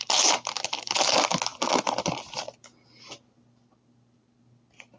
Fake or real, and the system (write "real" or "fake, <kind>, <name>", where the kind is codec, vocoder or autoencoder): real